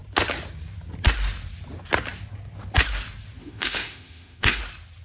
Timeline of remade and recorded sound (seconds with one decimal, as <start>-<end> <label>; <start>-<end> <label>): 0.0-3.4 recorded; 3.4-4.6 remade; 4.6-5.0 recorded